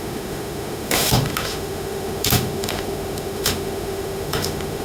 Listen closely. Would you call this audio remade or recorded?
remade